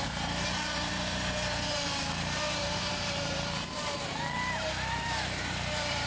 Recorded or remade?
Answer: remade